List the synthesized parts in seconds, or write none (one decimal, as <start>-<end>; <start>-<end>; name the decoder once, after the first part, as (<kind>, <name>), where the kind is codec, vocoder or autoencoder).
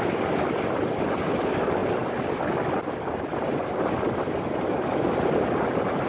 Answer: none